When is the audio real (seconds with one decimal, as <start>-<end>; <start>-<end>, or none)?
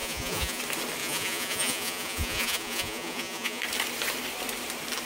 0.6-1.0; 3.6-5.1